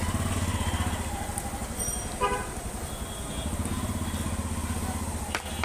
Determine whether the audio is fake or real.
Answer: real